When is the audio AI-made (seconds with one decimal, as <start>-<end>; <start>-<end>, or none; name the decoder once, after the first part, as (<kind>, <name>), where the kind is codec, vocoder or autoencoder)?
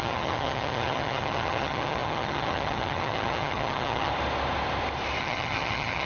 0.0-4.1 (vocoder, HiFi-GAN); 5.2-6.1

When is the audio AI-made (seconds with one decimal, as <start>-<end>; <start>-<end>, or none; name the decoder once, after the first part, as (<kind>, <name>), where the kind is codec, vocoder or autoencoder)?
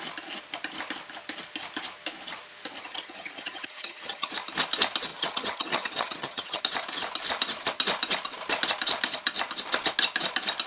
2.8-4.3 (vocoder, HiFi-GAN); 5.1-6.6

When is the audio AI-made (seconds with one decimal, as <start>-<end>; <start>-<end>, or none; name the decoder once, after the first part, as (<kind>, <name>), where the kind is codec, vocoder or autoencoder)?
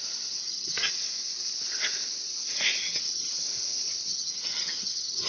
0.4-0.9 (vocoder, HiFi-GAN); 2.8-3.3; 4.1-5.3